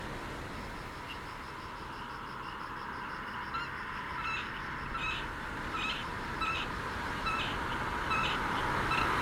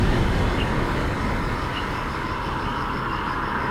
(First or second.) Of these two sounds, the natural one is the first